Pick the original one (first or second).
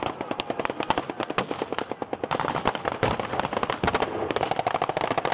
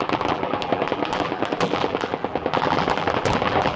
first